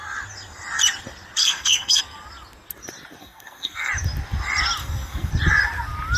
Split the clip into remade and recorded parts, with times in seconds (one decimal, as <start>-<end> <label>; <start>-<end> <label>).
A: 0.0-1.4 recorded; 1.4-2.0 remade; 2.0-3.2 recorded; 3.2-3.9 remade; 3.9-4.8 recorded; 4.8-5.3 remade; 5.3-6.2 recorded